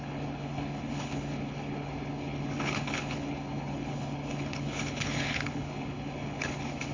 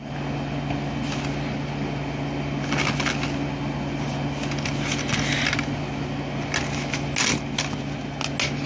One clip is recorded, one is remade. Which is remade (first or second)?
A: first